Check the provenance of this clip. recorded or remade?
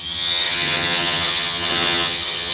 remade